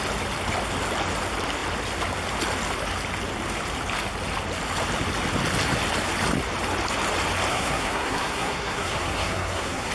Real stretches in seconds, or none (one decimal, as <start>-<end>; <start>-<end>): 0.0-7.5